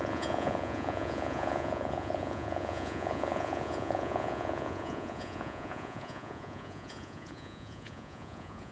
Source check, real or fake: fake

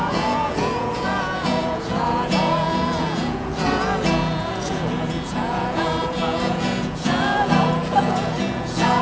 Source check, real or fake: fake